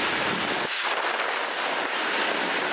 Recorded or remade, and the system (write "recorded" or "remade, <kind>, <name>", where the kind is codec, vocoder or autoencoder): recorded